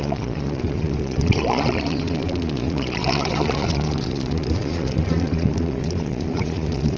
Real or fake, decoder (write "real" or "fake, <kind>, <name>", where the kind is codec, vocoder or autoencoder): fake, vocoder, Vocos